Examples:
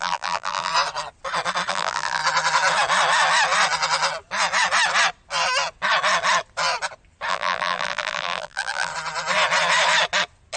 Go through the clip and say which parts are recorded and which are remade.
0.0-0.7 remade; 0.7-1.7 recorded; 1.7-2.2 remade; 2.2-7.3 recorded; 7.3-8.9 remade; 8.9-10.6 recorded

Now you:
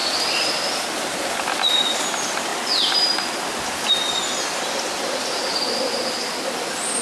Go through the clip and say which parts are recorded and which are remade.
0.0-1.7 recorded; 1.7-2.5 remade; 2.5-7.0 recorded

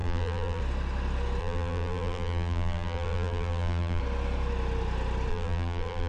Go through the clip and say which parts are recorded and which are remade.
0.0-0.6 remade; 0.6-1.4 recorded; 1.4-4.0 remade; 4.0-5.3 recorded; 5.3-6.1 remade

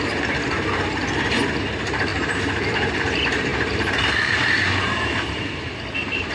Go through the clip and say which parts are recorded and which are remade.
0.0-6.3 remade